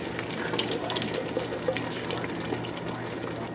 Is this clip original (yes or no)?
yes